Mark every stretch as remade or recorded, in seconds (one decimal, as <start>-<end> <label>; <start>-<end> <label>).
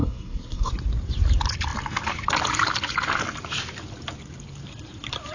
0.0-0.7 remade; 0.7-5.3 recorded